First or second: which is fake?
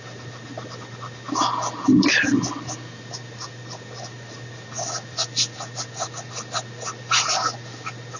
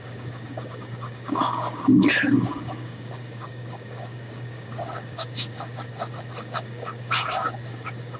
second